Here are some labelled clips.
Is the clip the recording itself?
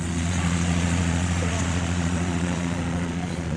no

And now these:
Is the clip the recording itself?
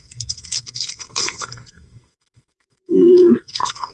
no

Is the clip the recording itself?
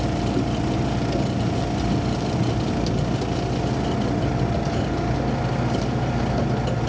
yes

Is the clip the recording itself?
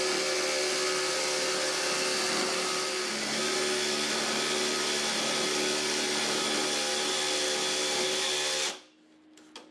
yes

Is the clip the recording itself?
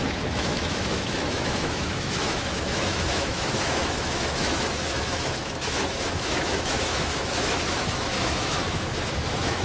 no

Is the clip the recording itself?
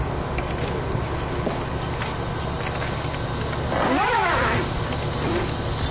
yes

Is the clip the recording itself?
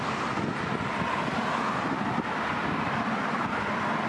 yes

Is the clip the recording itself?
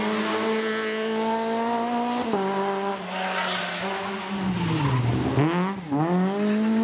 yes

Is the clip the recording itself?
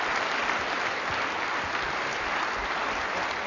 yes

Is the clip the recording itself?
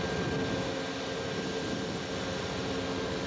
yes